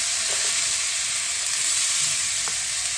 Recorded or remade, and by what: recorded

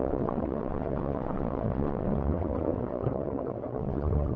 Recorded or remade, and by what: remade, vocoder, WaveNeXt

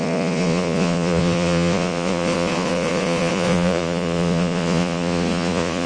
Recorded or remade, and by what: remade, vocoder, Vocos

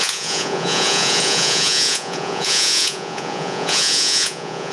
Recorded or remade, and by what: remade, vocoder, Vocos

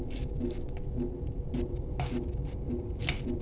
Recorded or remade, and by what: recorded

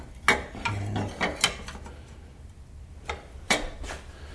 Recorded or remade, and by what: recorded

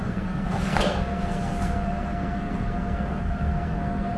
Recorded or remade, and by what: remade, codec, SNAC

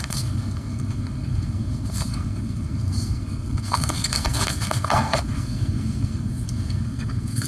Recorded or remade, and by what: remade, codec, SNAC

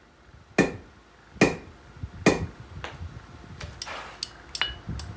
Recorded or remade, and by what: recorded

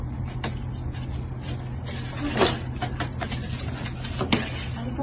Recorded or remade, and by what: recorded